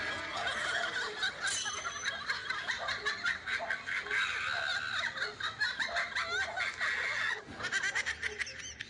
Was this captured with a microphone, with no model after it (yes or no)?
no